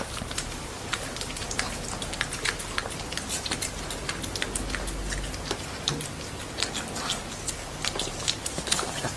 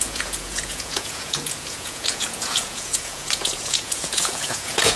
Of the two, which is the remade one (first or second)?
second